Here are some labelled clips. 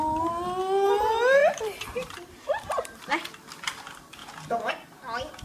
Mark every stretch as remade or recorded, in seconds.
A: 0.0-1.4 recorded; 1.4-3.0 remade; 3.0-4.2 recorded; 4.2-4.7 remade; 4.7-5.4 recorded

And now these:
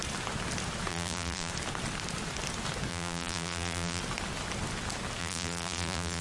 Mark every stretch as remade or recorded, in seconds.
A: 0.0-0.9 recorded; 0.9-1.5 remade; 1.5-2.9 recorded; 2.9-4.0 remade; 4.0-5.2 recorded; 5.2-6.2 remade

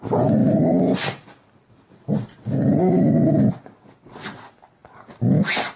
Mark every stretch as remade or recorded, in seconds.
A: 0.0-0.4 recorded; 0.4-2.7 remade; 2.7-5.8 recorded

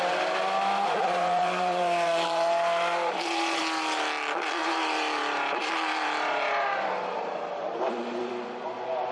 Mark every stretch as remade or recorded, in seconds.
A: 0.0-1.0 recorded; 1.0-3.6 remade; 3.6-4.6 recorded; 4.6-8.3 remade; 8.3-9.1 recorded

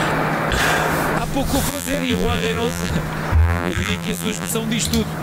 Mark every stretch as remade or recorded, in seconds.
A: 0.0-1.7 recorded; 1.7-2.9 remade; 2.9-3.4 recorded; 3.4-4.5 remade; 4.5-5.2 recorded